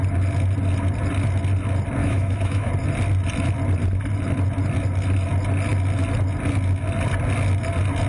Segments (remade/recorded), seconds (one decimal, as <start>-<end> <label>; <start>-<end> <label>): 0.0-2.0 recorded; 2.0-2.7 remade; 2.7-8.1 recorded